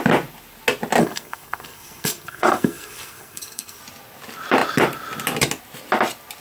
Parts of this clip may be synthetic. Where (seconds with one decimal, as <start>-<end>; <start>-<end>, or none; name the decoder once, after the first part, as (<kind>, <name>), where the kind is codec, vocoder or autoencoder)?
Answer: 1.0-3.8 (codec, SNAC)